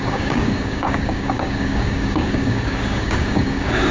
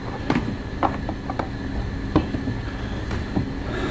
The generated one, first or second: first